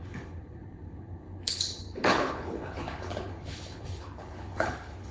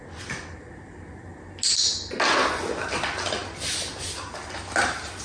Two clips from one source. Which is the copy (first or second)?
first